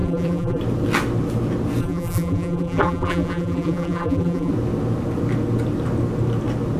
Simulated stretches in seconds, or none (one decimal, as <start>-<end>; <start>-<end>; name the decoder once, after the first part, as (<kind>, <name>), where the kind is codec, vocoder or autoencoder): 0.0-0.6 (vocoder, BigVGAN v2); 1.8-4.5